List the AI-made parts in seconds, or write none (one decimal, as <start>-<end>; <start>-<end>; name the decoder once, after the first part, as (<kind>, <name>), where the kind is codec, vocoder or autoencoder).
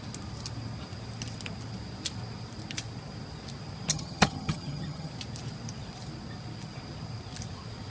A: 3.9-5.1 (vocoder, HiFi-GAN)